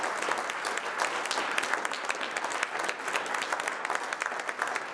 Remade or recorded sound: recorded